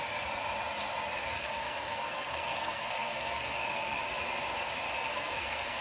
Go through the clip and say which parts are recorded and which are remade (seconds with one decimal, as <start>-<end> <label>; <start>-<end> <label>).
0.0-1.2 recorded; 1.2-4.0 remade; 4.0-5.0 recorded; 5.0-5.8 remade